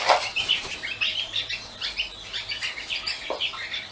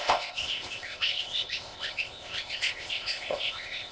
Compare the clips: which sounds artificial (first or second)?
second